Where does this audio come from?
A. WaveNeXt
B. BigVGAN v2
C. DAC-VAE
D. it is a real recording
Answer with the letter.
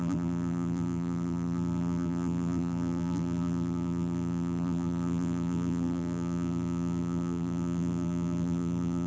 B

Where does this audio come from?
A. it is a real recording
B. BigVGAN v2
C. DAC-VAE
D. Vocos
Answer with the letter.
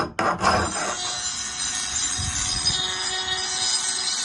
A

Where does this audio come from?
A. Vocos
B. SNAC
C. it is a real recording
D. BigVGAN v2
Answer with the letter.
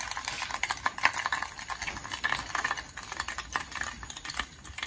C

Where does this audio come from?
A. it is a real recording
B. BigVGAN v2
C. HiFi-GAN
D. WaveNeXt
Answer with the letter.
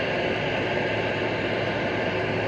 B